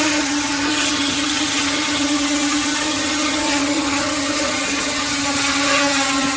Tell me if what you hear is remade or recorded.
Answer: remade